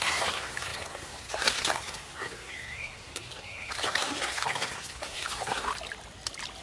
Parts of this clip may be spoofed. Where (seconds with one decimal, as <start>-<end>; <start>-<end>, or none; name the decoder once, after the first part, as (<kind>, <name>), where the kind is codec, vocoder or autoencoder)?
0.0-5.7 (codec, SNAC)